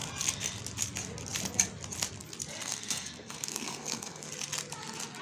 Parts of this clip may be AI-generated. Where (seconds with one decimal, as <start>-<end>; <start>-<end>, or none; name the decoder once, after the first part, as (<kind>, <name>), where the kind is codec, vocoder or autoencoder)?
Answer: 2.6-4.3 (codec, SNAC)

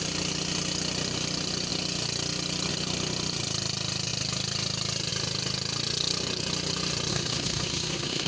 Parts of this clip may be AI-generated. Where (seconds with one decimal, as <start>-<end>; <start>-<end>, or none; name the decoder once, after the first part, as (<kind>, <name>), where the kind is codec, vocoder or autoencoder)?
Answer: 7.1-8.3 (codec, SNAC)

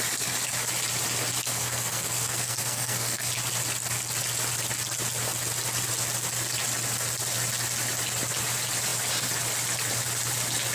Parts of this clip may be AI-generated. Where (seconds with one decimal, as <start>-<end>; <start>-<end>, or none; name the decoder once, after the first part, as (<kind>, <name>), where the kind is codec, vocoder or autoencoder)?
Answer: 1.4-3.3 (codec, SNAC)

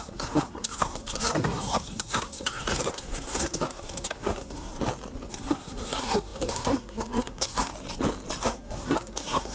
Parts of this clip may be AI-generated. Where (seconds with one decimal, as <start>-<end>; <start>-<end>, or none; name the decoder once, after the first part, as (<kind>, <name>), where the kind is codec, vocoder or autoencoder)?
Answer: 0.0-4.7 (codec, SNAC); 5.3-7.7; 8.4-9.5

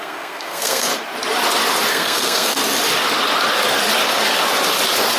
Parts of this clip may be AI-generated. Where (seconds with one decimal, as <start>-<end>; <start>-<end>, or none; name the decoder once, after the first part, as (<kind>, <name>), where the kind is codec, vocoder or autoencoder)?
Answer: 0.0-0.9 (codec, SNAC); 1.9-2.6